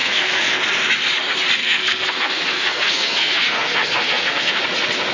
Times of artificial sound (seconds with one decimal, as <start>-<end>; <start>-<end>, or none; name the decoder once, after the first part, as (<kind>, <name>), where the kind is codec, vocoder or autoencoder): 0.0-0.6 (codec, SNAC); 1.6-4.6